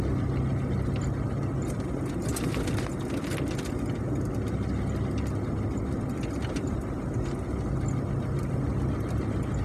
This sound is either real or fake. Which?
real